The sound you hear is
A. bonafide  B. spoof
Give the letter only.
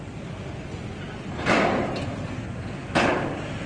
A